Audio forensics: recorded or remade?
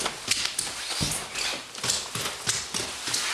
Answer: recorded